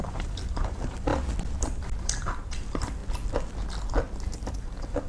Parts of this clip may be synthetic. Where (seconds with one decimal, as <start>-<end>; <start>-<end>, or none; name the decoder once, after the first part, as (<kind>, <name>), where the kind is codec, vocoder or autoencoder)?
0.0-1.1 (vocoder, BigVGAN v2); 2.0-3.0; 4.5-5.1